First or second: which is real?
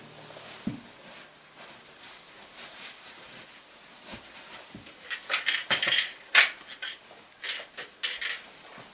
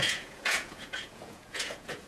first